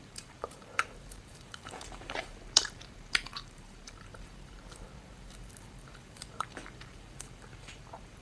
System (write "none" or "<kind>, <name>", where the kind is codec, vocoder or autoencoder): vocoder, BigVGAN v2